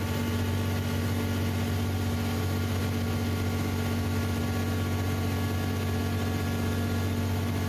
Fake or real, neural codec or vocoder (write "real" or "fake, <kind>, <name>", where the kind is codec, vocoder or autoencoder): real